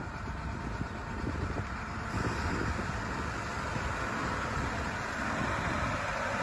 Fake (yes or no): no